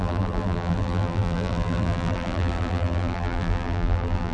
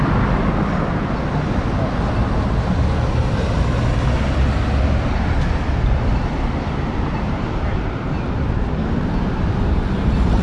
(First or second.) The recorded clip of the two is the second